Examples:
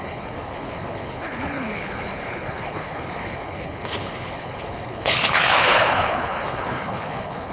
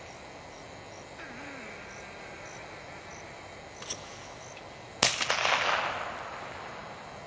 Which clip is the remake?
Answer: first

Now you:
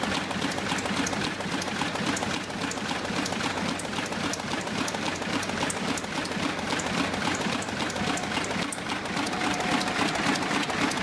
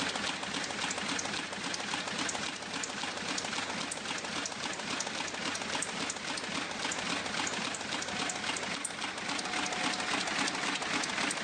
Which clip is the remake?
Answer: first